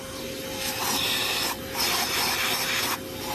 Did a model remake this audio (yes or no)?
no